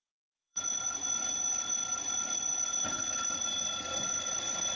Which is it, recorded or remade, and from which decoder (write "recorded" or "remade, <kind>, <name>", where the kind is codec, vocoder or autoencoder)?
remade, vocoder, Vocos